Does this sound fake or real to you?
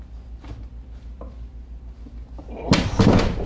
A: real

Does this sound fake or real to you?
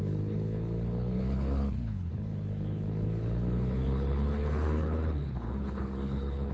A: fake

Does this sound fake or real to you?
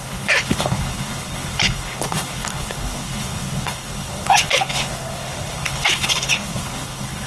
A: fake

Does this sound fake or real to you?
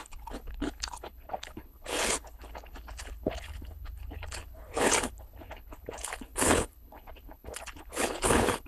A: fake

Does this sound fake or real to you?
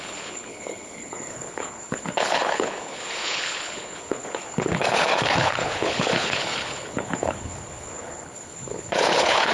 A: fake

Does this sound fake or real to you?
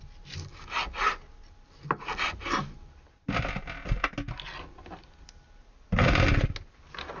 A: real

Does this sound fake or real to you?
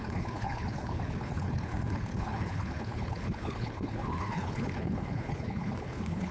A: fake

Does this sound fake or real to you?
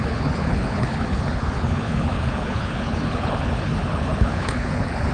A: fake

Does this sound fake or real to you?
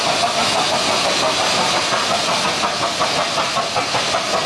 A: real